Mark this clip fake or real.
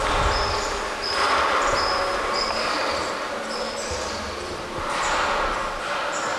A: real